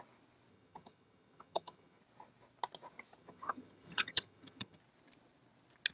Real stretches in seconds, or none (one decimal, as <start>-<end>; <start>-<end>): 0.0-0.5; 2.0-3.2; 4.8-5.9